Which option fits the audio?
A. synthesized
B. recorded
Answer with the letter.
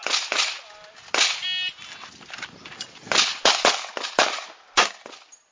B